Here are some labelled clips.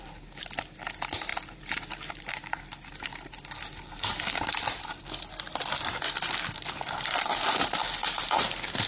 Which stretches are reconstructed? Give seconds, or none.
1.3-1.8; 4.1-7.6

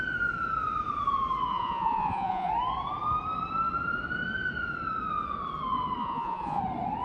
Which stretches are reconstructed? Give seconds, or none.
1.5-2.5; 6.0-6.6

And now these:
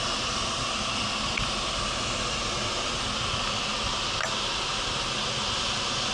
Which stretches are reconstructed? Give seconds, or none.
0.0-0.6